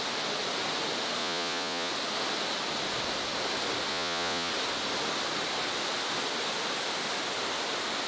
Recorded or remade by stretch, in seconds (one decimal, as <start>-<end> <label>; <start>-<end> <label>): 0.0-1.2 recorded; 1.2-1.9 remade; 1.9-3.9 recorded; 3.9-4.5 remade; 4.5-8.1 recorded